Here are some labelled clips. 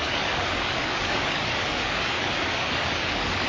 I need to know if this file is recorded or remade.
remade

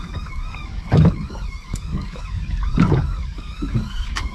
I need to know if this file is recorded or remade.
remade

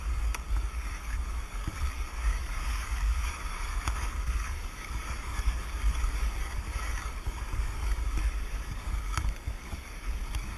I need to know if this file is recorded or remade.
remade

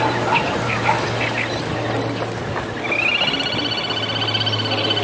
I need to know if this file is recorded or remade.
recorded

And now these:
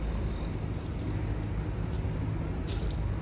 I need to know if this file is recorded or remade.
recorded